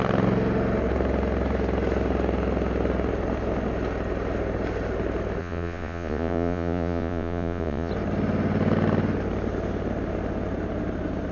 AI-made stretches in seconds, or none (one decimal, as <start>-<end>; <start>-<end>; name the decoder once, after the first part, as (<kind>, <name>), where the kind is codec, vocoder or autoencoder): 5.4-7.9 (vocoder, Vocos)